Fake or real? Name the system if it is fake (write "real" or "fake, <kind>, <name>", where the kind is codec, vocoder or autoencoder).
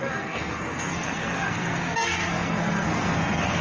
fake, codec, SNAC